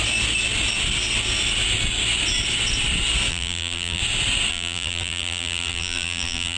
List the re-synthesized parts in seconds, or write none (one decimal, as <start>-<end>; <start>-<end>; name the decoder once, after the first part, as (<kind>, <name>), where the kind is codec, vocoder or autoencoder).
3.3-4.0 (vocoder, BigVGAN v2); 4.5-6.6